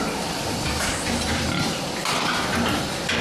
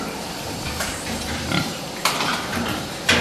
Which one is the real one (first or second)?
first